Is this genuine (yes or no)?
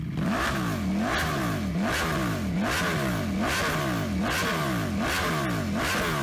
yes